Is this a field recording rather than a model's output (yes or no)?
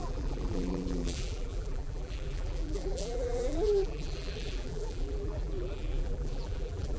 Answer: no